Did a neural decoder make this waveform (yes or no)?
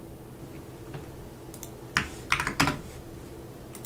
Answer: no